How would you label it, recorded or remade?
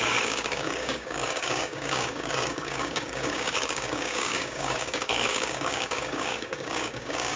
remade